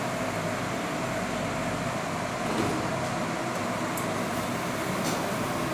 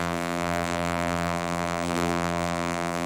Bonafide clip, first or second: first